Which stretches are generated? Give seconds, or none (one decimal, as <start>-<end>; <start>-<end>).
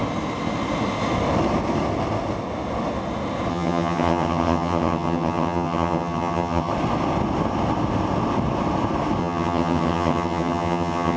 3.5-6.7; 9.2-11.2